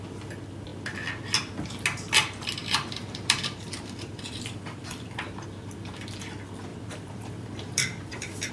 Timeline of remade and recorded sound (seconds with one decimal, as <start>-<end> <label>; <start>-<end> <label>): 0.0-2.6 recorded; 2.6-6.1 remade; 6.1-6.7 recorded; 6.7-8.5 remade